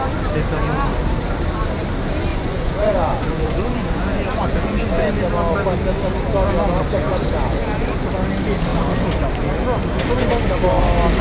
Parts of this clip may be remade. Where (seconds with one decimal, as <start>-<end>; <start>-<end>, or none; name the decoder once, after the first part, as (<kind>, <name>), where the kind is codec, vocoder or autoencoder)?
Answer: 2.3-5.1 (vocoder, Vocos)